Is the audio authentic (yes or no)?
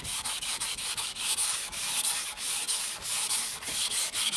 no